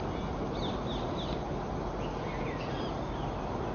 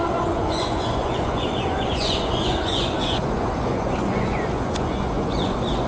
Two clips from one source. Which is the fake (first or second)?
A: second